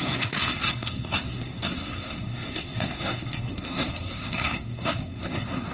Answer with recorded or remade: remade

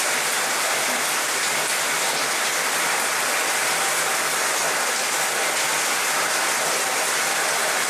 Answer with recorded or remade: remade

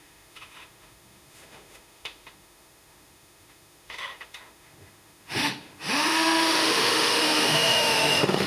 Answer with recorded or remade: remade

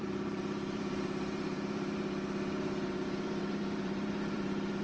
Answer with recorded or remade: remade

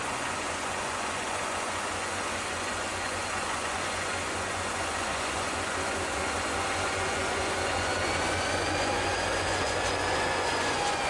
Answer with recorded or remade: remade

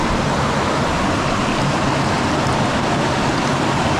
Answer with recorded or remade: recorded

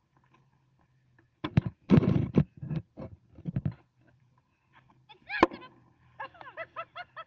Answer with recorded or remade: recorded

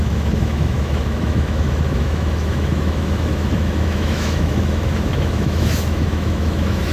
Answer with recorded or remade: remade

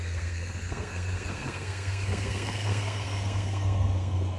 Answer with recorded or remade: remade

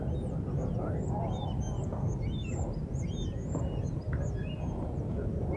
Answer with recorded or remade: recorded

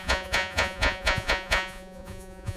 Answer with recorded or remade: remade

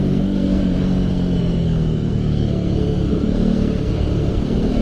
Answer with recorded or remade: remade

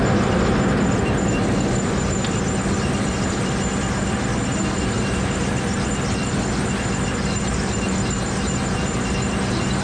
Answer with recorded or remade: recorded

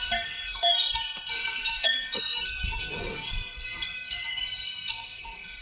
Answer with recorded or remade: remade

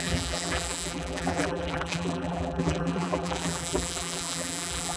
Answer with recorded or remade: remade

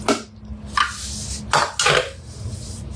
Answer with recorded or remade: recorded